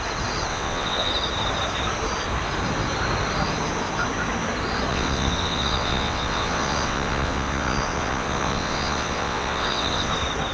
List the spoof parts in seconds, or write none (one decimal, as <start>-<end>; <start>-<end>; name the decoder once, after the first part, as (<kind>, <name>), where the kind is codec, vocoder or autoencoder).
0.5-1.1 (vocoder, WaveNeXt); 4.9-10.1